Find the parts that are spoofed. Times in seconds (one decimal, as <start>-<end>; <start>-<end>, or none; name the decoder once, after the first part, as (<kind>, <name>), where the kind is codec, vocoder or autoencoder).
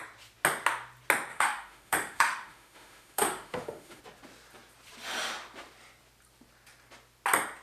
1.3-4.0 (autoencoder, DAC-VAE)